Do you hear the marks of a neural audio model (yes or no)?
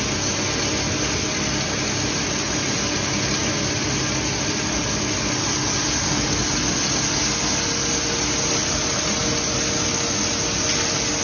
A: no